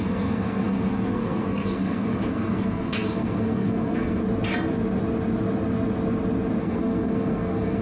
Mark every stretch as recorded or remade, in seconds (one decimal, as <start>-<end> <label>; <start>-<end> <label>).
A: 0.0-4.2 remade; 4.2-6.6 recorded; 6.6-7.8 remade